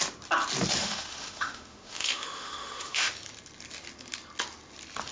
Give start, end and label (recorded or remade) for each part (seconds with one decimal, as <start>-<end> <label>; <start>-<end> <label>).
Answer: 0.0-0.8 recorded; 0.8-3.1 remade; 3.1-5.1 recorded